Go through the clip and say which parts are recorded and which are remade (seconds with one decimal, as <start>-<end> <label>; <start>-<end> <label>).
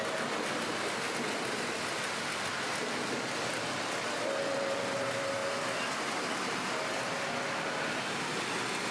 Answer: 0.0-8.9 recorded